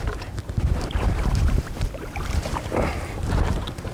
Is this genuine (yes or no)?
no